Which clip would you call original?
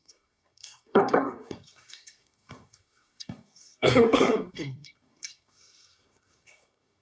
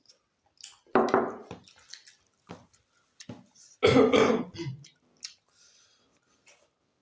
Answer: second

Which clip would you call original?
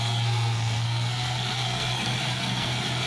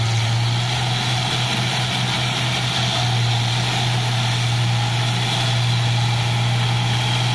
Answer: second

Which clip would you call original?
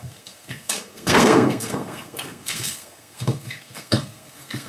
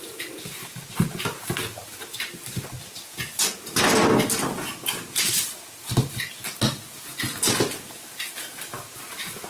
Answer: second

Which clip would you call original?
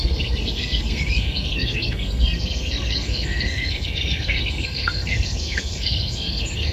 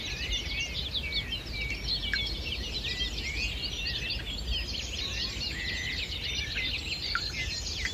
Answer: second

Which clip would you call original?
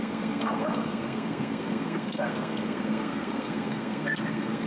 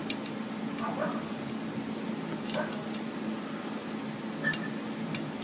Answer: second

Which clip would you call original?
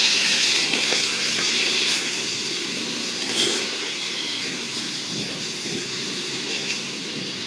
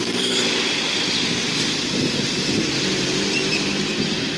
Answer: second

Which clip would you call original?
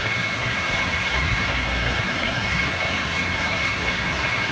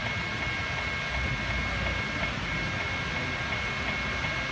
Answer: second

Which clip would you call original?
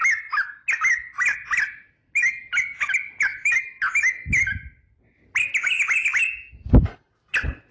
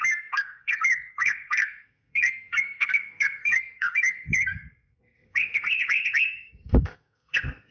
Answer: first